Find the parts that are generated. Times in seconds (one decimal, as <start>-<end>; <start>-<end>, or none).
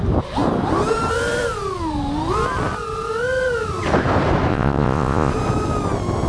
4.5-5.3